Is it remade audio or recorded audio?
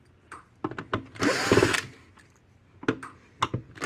recorded